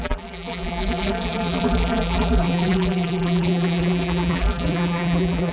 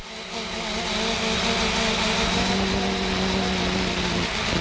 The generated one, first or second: first